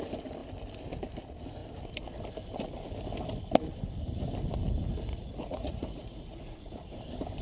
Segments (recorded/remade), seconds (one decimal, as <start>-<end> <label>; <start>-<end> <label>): 0.0-5.1 recorded; 5.1-7.0 remade; 7.0-7.4 recorded